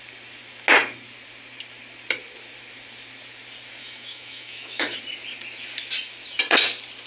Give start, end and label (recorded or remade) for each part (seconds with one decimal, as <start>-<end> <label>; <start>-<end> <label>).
0.0-3.8 recorded; 3.8-5.0 remade; 5.0-7.1 recorded